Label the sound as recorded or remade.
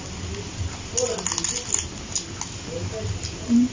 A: recorded